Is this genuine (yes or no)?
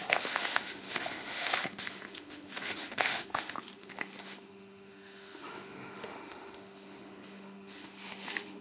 no